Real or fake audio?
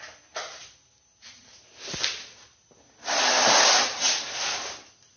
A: real